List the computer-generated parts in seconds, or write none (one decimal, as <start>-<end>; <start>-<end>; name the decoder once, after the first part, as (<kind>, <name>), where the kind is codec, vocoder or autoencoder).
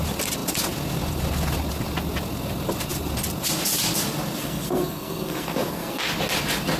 4.4-6.1 (codec, SNAC)